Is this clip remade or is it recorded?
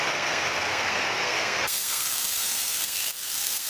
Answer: remade